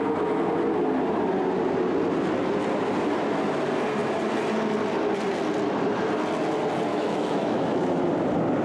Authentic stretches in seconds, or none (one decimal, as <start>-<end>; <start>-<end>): 0.0-6.9; 8.0-8.6